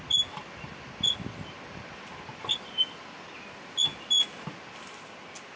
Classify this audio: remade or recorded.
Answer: recorded